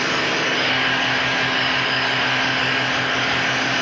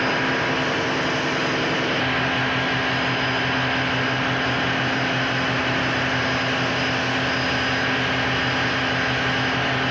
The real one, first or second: second